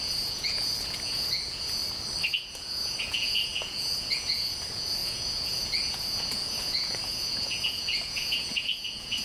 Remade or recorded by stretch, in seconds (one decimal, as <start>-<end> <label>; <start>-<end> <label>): 0.0-1.8 remade; 1.8-2.3 recorded; 2.3-9.2 remade